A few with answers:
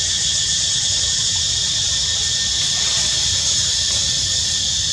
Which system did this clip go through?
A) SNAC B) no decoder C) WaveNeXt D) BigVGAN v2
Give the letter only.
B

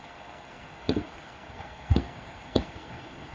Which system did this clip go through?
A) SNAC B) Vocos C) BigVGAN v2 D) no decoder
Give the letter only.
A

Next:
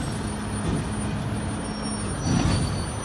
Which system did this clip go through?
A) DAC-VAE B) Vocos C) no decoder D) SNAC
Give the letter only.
C